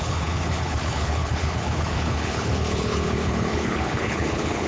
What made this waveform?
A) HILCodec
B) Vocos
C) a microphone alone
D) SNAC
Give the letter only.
A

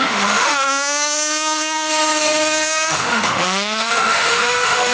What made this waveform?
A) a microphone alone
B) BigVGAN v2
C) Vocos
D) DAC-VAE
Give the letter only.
D